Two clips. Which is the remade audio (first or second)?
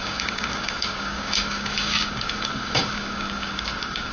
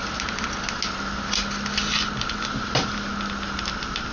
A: first